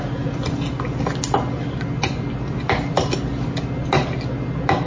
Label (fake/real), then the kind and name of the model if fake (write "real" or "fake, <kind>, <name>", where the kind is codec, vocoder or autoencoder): real